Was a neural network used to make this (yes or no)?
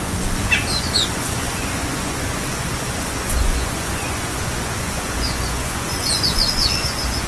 yes